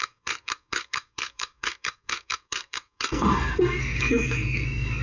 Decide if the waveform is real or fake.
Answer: fake